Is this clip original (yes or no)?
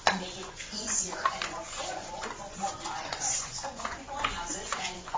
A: no